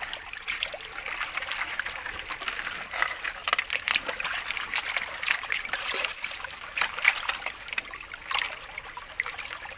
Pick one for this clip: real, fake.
fake